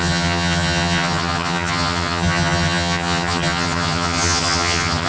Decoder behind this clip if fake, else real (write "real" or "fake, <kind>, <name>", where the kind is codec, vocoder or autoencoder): fake, vocoder, HiFi-GAN